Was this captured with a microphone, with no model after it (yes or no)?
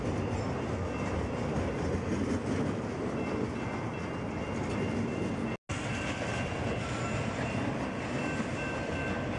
yes